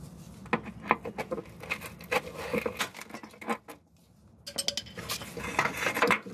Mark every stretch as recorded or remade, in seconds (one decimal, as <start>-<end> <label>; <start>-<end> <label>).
0.0-6.3 recorded